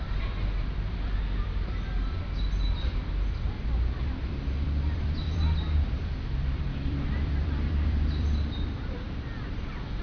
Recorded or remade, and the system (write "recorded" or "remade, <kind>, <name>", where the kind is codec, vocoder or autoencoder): remade, vocoder, BigVGAN v2